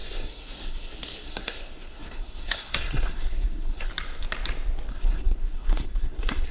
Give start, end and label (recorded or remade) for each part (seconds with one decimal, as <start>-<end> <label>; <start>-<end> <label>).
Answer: 0.0-3.9 remade; 3.9-4.9 recorded; 4.9-6.5 remade